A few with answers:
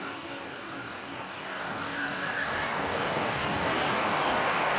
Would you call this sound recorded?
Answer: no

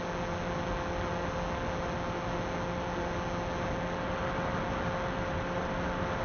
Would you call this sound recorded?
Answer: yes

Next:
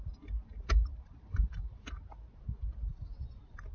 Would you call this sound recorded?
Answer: yes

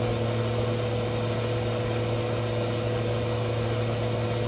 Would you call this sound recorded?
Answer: yes